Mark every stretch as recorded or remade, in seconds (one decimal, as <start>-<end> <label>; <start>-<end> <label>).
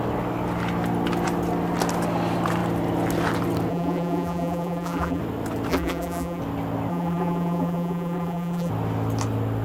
0.0-3.7 recorded; 3.7-5.2 remade; 5.2-5.7 recorded; 5.7-6.4 remade; 6.4-6.9 recorded; 6.9-8.7 remade; 8.7-9.6 recorded